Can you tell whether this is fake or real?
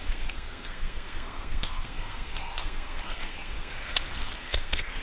fake